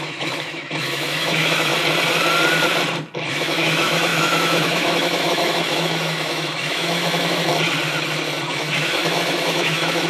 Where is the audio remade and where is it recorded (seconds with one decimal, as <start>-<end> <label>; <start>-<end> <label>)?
0.0-1.7 remade; 1.7-3.3 recorded; 3.3-7.5 remade; 7.5-8.5 recorded; 8.5-10.1 remade